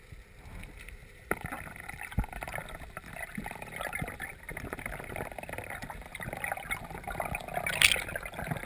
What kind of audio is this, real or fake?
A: real